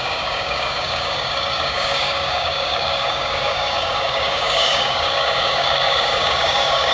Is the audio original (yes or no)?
no